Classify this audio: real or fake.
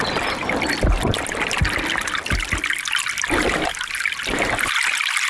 real